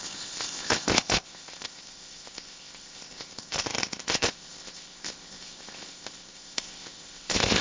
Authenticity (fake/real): fake